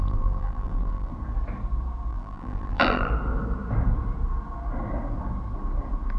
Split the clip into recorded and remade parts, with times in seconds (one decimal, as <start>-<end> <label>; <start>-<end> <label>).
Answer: 0.0-1.1 remade; 1.1-2.1 recorded; 2.1-3.1 remade; 3.1-6.2 recorded